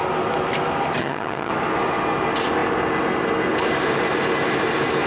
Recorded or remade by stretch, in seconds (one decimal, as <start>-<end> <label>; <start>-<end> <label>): 0.0-1.0 recorded; 1.0-1.5 remade; 1.5-5.1 recorded